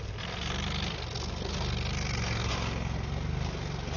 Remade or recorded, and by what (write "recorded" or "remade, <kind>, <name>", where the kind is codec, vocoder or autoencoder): recorded